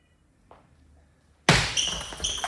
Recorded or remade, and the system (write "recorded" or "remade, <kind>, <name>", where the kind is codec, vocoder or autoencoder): recorded